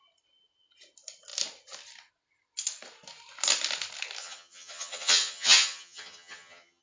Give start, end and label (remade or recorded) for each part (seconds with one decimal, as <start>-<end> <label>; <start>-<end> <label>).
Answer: 0.0-4.2 recorded; 4.2-6.8 remade